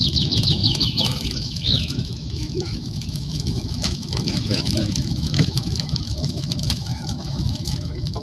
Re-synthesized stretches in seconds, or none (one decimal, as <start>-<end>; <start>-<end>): 0.0-8.2